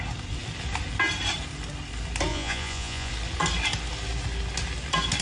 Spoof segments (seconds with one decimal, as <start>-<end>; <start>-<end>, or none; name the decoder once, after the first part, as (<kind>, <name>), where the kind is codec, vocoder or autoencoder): 2.3-3.1 (vocoder, Vocos)